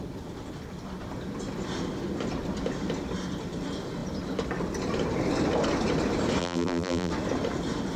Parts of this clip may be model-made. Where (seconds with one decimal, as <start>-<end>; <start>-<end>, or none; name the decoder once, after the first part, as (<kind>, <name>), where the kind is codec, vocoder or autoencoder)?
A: 6.4-7.1 (vocoder, BigVGAN v2)